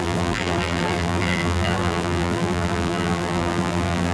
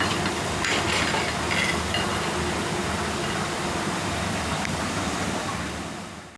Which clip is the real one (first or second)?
second